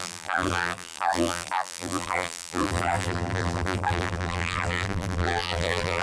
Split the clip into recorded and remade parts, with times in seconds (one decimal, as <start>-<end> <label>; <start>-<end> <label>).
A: 0.0-6.0 remade

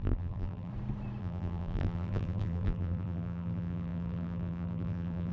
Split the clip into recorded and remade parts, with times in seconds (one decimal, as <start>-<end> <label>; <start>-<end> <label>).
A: 0.0-0.7 remade; 0.7-1.2 recorded; 1.2-5.3 remade

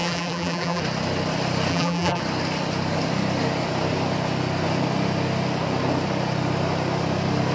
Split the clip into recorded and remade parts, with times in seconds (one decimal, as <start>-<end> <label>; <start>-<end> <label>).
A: 0.0-0.8 remade; 0.8-1.7 recorded; 1.7-2.2 remade; 2.2-7.5 recorded

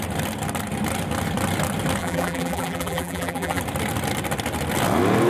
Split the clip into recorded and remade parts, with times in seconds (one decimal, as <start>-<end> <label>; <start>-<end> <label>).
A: 0.0-2.0 recorded; 2.0-3.6 remade; 3.6-5.3 recorded